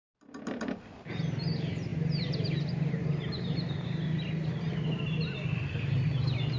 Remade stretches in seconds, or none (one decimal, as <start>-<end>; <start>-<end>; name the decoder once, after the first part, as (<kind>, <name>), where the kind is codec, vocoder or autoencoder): none